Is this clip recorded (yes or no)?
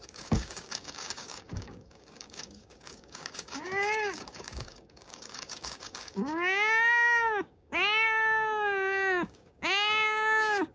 no